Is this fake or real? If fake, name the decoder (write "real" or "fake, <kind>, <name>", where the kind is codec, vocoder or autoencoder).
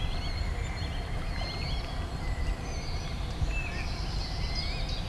real